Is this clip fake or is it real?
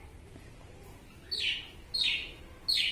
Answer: real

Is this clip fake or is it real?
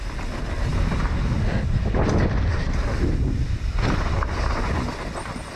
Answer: real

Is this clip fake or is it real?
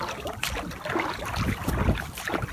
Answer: fake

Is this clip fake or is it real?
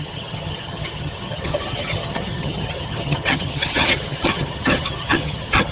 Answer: fake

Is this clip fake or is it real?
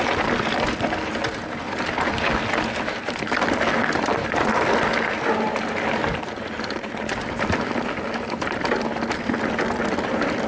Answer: real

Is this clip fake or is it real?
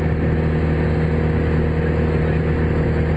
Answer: real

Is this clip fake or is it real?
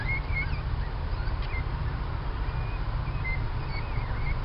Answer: real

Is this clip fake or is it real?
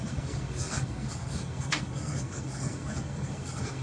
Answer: fake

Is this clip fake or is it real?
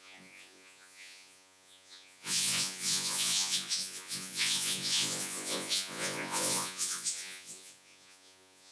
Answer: fake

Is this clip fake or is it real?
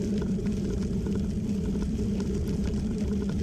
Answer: fake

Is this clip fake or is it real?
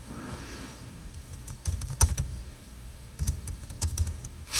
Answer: fake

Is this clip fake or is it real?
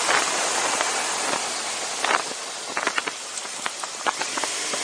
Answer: real